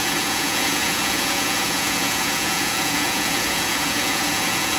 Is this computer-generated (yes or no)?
yes